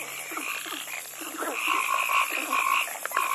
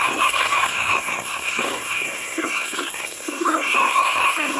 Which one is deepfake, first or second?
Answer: second